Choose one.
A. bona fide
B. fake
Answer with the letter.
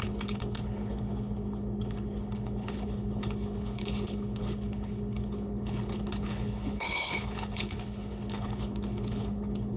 B